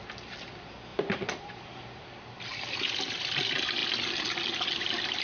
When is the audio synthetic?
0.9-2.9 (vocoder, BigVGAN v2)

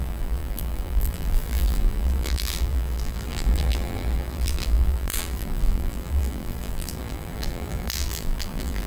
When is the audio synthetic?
0.0-8.9 (vocoder, BigVGAN v2)

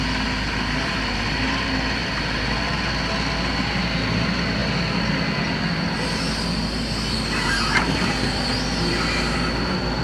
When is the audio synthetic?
none

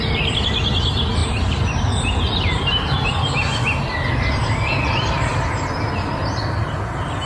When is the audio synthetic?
1.2-3.1 (vocoder, BigVGAN v2)

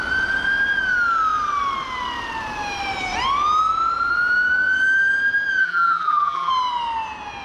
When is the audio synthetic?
5.6-6.5 (vocoder, BigVGAN v2)